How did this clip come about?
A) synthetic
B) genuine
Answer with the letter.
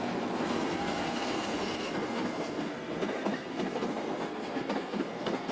A